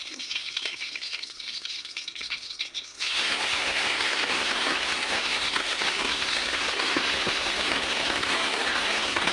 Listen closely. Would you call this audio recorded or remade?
remade